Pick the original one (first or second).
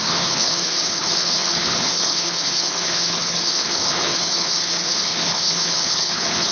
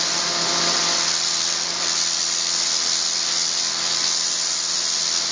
second